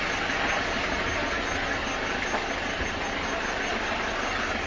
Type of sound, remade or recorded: recorded